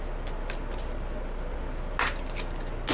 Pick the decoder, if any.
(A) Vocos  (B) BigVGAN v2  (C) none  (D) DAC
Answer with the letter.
C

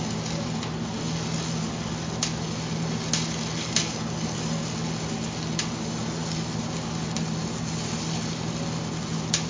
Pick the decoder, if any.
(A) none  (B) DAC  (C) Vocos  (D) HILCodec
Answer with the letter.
A